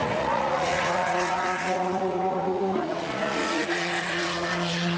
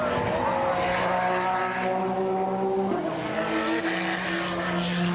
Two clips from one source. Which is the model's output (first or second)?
first